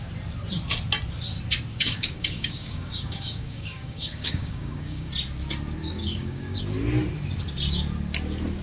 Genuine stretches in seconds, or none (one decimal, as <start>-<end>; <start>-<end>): 0.0-1.7; 5.1-6.0; 6.6-8.6